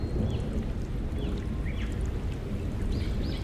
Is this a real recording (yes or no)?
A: yes